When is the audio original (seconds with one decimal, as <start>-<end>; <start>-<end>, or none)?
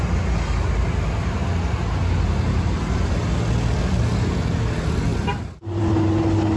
0.0-5.1; 5.8-6.6